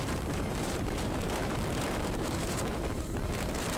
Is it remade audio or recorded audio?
remade